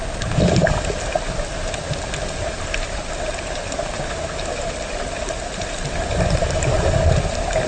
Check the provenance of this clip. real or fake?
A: real